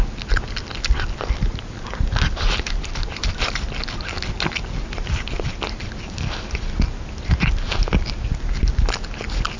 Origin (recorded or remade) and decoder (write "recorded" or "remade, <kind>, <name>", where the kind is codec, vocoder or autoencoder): recorded